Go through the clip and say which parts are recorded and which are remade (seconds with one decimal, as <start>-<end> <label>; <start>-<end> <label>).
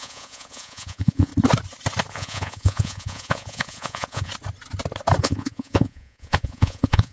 0.0-1.3 remade; 1.3-2.1 recorded; 2.1-4.3 remade; 4.3-5.2 recorded; 5.2-7.1 remade